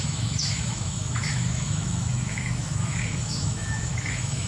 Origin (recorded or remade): remade